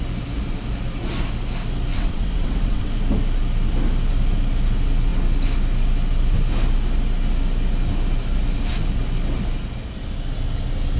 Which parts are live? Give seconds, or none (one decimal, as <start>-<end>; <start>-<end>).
0.0-1.9; 2.9-11.0